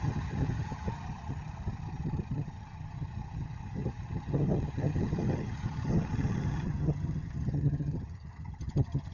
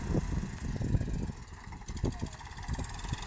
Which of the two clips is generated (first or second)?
first